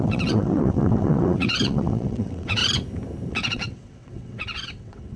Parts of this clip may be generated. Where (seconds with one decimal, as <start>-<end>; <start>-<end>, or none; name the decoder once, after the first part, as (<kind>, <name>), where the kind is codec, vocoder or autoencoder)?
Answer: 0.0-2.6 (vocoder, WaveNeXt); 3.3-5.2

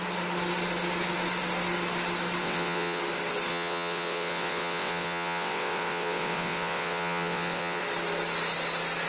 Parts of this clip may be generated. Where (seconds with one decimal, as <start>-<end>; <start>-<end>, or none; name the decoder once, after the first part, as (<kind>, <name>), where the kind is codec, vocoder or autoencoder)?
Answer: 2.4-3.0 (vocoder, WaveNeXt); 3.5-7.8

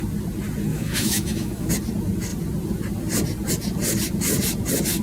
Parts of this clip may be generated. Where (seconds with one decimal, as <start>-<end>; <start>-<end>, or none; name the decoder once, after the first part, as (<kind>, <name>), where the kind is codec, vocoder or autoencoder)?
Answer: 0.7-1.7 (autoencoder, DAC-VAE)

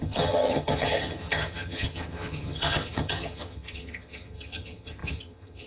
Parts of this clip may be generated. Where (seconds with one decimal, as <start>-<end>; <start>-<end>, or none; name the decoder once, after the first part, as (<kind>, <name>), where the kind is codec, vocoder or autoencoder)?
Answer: 0.0-5.7 (vocoder, HiFi-GAN)

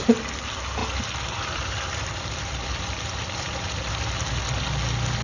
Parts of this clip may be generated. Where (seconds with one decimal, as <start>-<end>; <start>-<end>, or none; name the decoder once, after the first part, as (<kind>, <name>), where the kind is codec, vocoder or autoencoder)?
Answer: 0.8-3.9 (vocoder, BigVGAN v2)

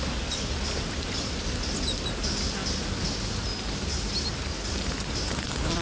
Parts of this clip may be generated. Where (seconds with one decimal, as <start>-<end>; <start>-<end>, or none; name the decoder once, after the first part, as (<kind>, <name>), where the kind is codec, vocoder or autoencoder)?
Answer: none